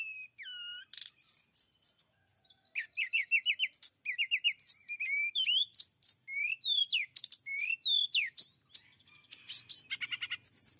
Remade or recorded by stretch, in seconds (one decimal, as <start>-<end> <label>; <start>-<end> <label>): 0.0-10.8 recorded

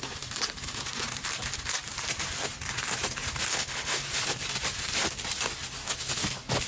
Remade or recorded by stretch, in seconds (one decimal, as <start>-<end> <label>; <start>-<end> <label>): 0.0-3.5 recorded; 3.5-4.0 remade; 4.0-6.7 recorded